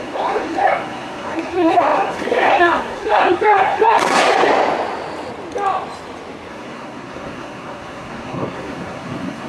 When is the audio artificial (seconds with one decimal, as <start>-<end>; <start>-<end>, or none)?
0.0-4.5; 6.5-9.5